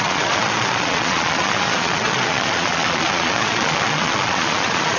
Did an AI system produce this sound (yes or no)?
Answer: yes